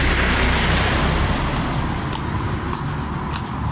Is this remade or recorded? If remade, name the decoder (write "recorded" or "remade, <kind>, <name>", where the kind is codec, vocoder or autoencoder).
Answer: recorded